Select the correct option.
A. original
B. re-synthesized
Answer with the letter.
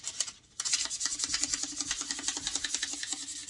A